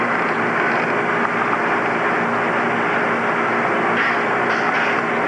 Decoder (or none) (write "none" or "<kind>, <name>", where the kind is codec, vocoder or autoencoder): none